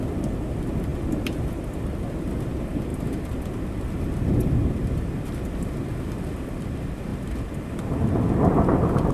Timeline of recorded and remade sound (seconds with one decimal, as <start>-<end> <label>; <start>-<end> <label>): 0.0-9.1 recorded